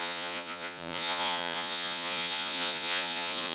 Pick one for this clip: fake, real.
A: fake